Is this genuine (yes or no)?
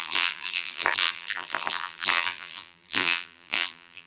no